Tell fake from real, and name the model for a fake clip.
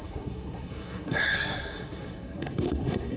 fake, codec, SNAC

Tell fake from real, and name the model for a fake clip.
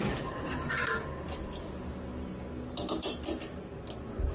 real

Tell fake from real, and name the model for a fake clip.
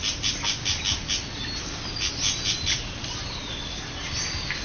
real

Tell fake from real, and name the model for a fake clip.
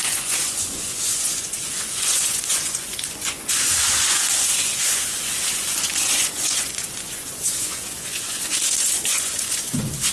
fake, vocoder, Vocos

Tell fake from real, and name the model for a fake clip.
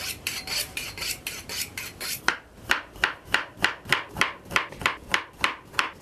fake, vocoder, BigVGAN v2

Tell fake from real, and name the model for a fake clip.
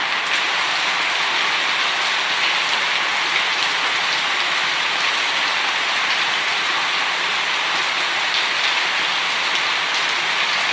real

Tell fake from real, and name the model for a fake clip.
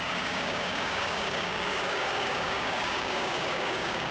fake, codec, DAC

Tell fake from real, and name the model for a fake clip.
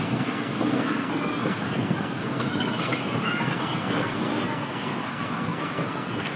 fake, codec, SNAC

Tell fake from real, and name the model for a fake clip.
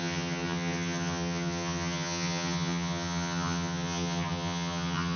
fake, vocoder, HiFi-GAN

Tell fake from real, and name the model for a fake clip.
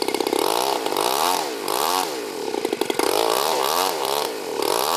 real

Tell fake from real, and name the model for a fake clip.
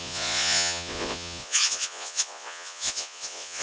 fake, vocoder, Vocos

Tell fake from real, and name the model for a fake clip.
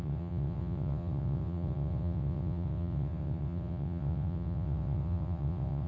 fake, vocoder, WaveNeXt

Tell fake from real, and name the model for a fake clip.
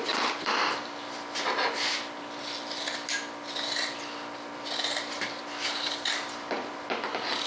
real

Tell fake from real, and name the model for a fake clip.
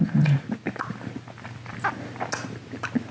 real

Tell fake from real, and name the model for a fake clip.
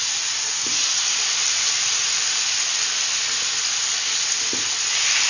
real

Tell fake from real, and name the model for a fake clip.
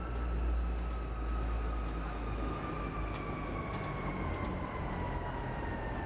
real